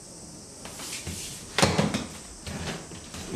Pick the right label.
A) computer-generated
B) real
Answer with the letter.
B